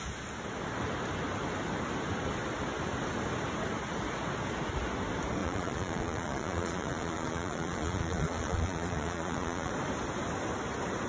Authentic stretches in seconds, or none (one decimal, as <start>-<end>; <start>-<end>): 0.0-5.4; 9.7-11.1